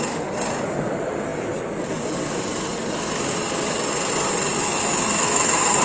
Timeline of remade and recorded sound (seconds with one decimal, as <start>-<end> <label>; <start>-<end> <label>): 0.0-4.5 recorded; 4.5-5.8 remade